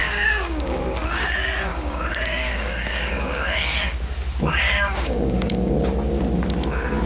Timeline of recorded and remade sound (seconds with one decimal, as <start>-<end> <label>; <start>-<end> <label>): 0.0-0.8 remade; 0.8-1.7 recorded; 1.7-4.1 remade; 4.1-4.5 recorded; 4.5-5.7 remade; 5.7-7.1 recorded